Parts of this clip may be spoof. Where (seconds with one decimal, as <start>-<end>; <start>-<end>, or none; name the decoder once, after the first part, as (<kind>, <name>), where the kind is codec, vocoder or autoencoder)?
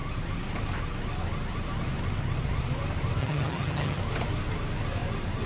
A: 3.2-4.0 (vocoder, HiFi-GAN)